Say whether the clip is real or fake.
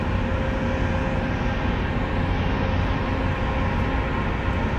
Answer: real